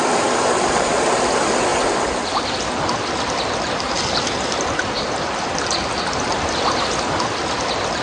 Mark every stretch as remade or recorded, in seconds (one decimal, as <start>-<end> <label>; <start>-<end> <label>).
0.0-8.0 recorded